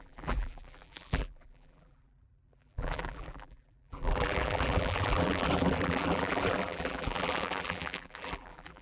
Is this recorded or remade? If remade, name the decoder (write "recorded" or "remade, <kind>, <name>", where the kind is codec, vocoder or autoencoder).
remade, vocoder, BigVGAN v2